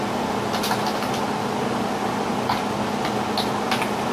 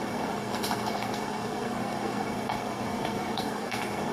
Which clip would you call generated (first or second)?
second